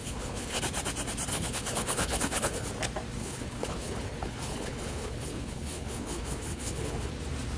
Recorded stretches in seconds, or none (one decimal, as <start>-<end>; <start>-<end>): 0.6-1.3; 2.7-3.2; 7.1-7.6